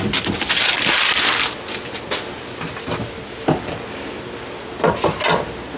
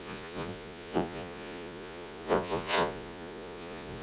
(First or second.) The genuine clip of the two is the first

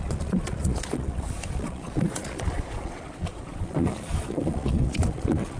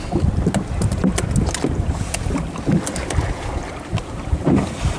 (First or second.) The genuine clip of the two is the second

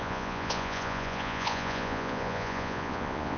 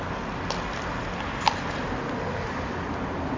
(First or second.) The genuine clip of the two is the second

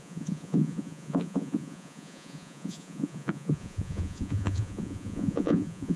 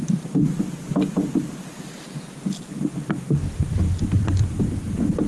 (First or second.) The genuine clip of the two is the second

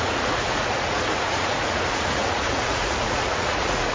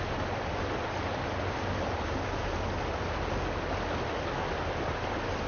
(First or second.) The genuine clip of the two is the second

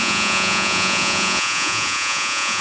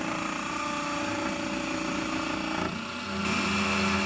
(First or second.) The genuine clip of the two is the second